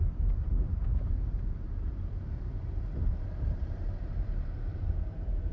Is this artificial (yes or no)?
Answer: yes